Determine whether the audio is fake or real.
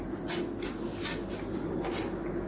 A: real